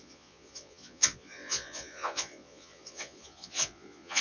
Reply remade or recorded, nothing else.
remade